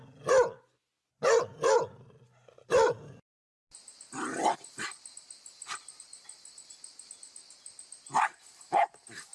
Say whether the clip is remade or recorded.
recorded